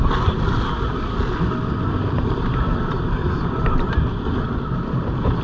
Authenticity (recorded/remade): recorded